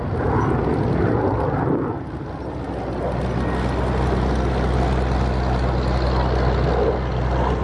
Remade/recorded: recorded